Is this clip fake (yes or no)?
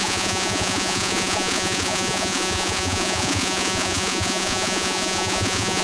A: yes